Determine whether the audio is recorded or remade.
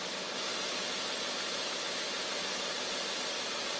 recorded